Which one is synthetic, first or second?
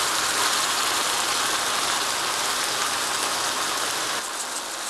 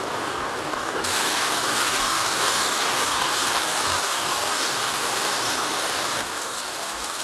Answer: second